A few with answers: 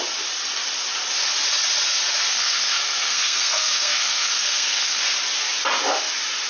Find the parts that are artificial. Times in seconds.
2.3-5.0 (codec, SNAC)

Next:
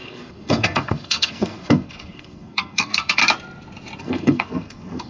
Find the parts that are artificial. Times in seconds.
0.0-3.2 (codec, SNAC); 4.0-5.1

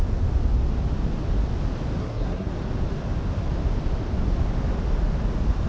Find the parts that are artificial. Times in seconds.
2.0-2.5 (codec, SNAC)

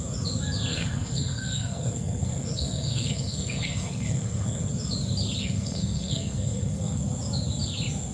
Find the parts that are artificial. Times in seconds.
0.7-4.7 (codec, SNAC); 5.4-7.0

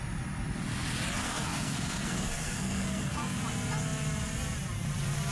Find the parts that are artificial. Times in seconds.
1.2-3.4 (codec, SNAC)

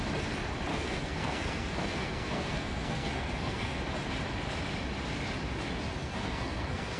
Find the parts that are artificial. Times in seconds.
0.7-3.8 (codec, SNAC); 6.0-7.0

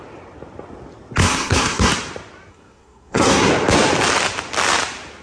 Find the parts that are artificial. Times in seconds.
1.2-1.9 (codec, SNAC); 2.5-3.5